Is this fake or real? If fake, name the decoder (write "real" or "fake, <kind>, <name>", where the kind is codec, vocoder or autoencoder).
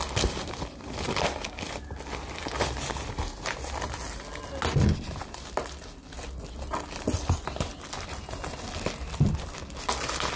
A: real